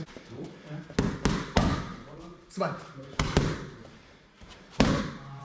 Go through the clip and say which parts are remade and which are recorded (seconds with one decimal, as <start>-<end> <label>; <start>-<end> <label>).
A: 0.0-1.9 recorded; 1.9-5.4 remade